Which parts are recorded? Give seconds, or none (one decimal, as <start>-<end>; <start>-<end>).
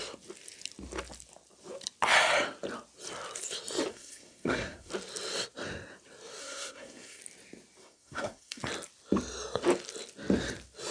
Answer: 0.0-3.9; 4.9-6.4; 7.2-7.8; 8.6-10.9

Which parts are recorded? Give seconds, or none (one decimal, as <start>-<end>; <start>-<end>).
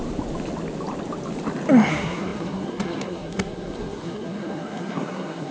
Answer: 0.0-1.9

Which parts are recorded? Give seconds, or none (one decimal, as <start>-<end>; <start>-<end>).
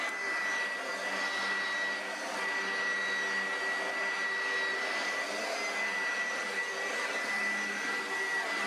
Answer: 0.0-8.7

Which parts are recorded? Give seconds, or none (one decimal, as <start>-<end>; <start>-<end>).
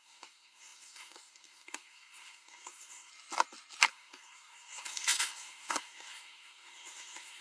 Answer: 3.1-3.9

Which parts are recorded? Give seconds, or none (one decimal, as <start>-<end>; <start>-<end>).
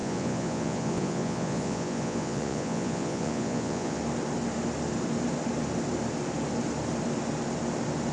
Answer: 4.0-8.1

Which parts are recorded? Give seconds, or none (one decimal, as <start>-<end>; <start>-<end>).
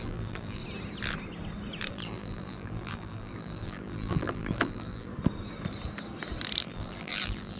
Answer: 0.6-1.9; 5.1-6.6